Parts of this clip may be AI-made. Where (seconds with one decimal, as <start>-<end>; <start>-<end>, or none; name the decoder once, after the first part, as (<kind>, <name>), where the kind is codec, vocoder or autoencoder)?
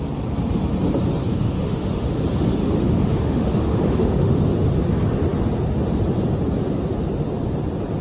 1.3-2.1 (autoencoder, DAC-VAE); 2.6-4.4